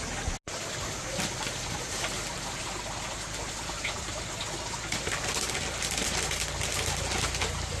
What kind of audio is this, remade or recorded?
recorded